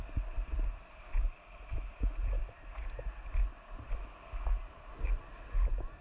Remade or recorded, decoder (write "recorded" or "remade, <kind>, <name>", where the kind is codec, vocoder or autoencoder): recorded